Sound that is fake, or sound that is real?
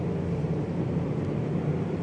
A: real